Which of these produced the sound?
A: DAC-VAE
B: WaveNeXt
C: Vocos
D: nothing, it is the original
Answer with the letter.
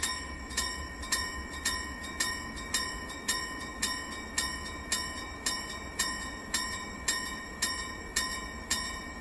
C